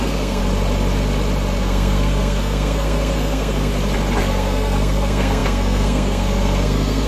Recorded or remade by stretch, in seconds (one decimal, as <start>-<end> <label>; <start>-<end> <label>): 0.0-0.4 remade; 0.4-1.6 recorded; 1.6-3.7 remade; 3.7-4.2 recorded; 4.2-7.1 remade